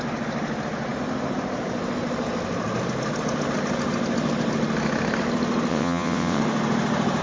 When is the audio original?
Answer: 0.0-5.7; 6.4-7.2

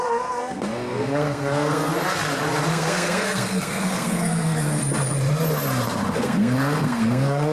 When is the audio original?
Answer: 1.9-2.7; 4.8-6.1

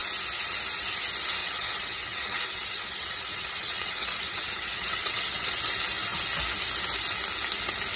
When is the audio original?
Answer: 0.0-1.4; 5.6-8.0